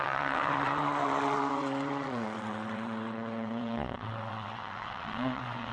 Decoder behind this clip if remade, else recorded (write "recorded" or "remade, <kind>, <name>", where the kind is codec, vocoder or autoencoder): remade, vocoder, WaveNeXt